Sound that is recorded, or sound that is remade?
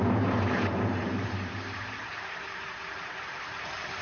remade